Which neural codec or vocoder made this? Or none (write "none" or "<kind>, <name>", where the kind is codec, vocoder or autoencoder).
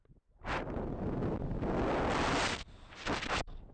none